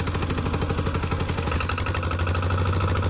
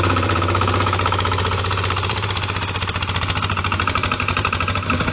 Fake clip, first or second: second